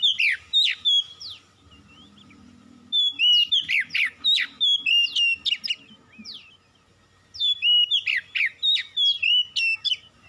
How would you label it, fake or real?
real